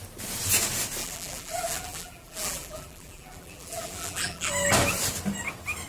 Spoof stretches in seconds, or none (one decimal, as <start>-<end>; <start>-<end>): 1.0-4.5